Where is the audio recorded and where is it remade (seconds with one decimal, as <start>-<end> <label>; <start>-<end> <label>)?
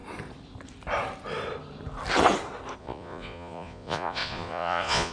0.0-2.8 recorded; 2.8-5.1 remade